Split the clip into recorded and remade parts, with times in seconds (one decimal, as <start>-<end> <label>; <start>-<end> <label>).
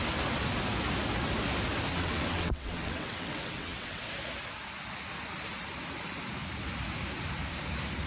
0.0-1.9 recorded; 1.9-4.1 remade; 4.1-8.1 recorded